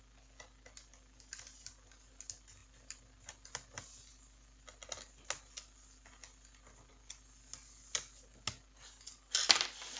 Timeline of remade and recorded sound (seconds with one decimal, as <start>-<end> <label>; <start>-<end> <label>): 0.0-10.0 recorded